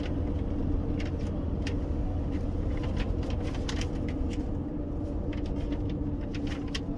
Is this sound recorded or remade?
recorded